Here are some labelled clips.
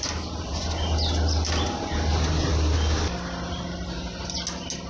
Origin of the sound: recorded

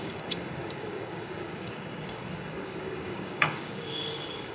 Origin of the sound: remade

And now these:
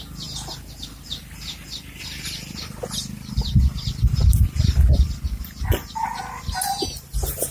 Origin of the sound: recorded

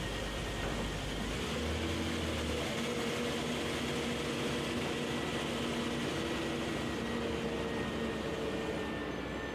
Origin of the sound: recorded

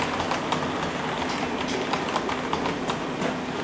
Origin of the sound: recorded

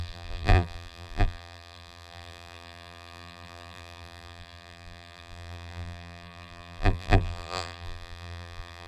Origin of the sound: remade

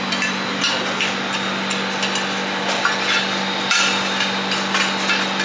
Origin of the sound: recorded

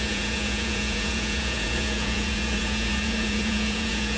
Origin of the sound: remade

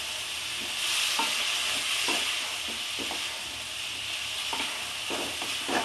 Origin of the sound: recorded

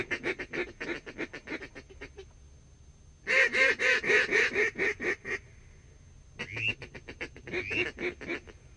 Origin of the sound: recorded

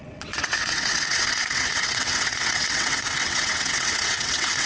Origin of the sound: remade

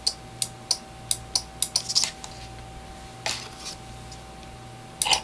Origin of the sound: recorded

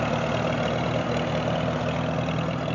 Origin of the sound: recorded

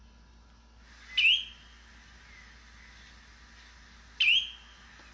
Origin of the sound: recorded